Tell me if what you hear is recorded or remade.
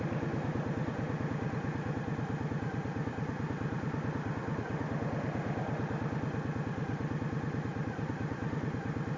recorded